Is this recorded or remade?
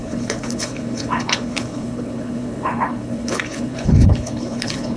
remade